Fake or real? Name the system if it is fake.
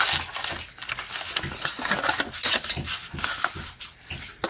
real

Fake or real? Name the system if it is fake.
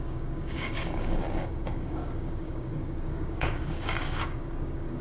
fake, codec, DAC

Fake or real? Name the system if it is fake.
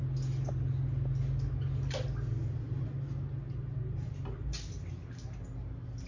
real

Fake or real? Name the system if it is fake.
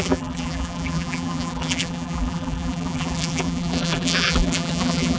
fake, vocoder, BigVGAN v2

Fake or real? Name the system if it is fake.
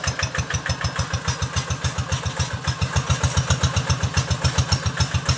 real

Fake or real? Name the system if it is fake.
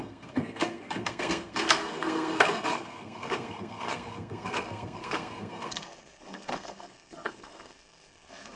fake, codec, SNAC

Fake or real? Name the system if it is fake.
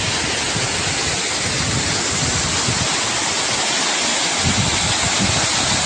real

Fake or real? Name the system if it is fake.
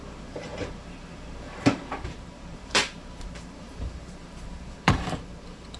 fake, vocoder, BigVGAN v2